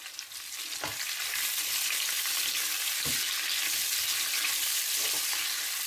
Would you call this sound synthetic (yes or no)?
no